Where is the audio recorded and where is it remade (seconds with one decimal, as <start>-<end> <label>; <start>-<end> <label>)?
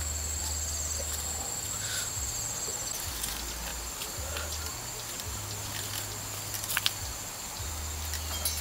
0.0-0.4 recorded; 0.4-2.1 remade; 2.1-2.7 recorded; 2.7-3.3 remade; 3.3-3.7 recorded; 3.7-4.6 remade; 4.6-8.6 recorded